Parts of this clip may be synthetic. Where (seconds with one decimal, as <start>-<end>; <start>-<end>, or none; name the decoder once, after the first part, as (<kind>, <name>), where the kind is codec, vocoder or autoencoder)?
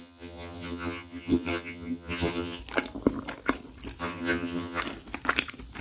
0.0-2.6 (vocoder, HiFi-GAN); 4.0-4.8